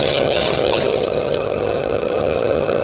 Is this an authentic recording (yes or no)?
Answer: no